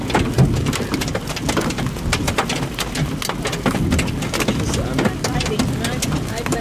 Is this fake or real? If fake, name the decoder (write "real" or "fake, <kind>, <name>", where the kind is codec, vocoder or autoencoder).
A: real